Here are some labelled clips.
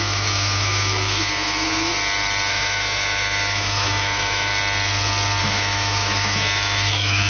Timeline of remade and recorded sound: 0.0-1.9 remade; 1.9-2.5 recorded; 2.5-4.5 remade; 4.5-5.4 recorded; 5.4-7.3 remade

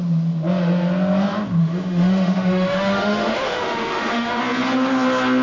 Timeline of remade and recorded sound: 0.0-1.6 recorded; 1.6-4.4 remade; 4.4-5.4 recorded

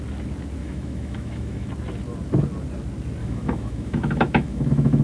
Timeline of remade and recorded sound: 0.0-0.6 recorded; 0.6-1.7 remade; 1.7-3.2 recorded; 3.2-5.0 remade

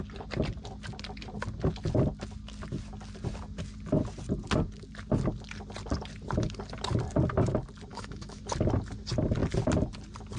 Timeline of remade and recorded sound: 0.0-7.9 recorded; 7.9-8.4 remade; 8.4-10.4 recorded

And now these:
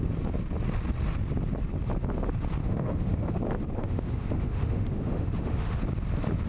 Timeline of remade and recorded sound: 0.0-2.6 recorded; 2.6-3.4 remade; 3.4-3.8 recorded; 3.8-5.8 remade; 5.8-6.5 recorded

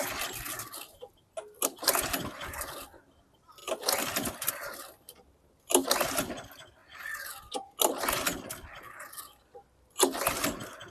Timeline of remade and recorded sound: 0.0-10.9 recorded

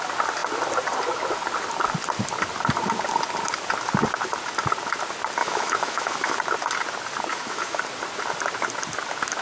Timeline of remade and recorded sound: 0.0-5.4 recorded; 5.4-6.4 remade; 6.4-7.3 recorded; 7.3-7.8 remade; 7.8-9.4 recorded